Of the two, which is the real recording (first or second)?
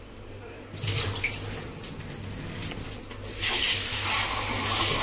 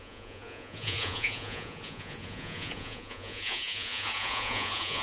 first